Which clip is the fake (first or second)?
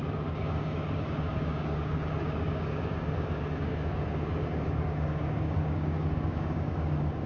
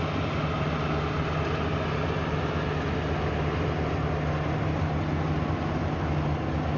first